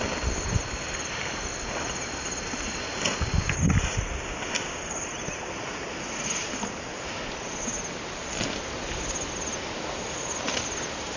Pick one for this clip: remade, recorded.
recorded